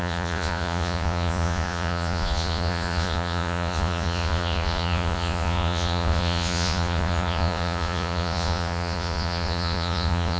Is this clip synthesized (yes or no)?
yes